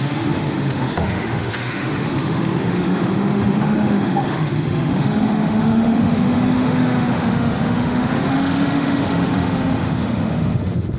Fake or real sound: fake